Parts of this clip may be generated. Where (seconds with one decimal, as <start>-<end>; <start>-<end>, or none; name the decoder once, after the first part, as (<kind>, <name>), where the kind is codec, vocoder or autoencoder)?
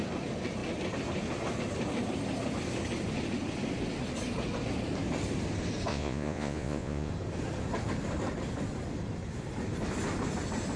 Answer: 5.9-7.1 (vocoder, Vocos)